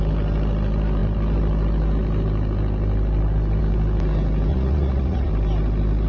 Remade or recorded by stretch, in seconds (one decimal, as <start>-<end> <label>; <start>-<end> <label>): 0.0-4.5 recorded; 4.5-5.3 remade; 5.3-6.1 recorded